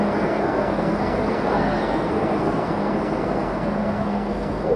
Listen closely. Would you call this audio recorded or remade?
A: remade